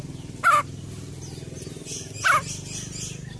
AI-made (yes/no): no